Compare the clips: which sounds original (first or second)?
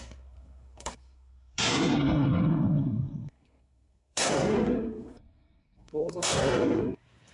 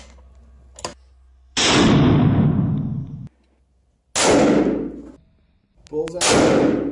second